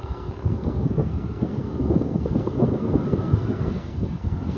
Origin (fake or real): fake